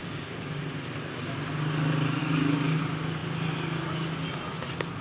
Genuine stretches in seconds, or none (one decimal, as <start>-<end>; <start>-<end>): 0.6-2.2; 2.8-5.0